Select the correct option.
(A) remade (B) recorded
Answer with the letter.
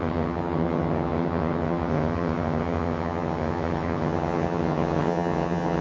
A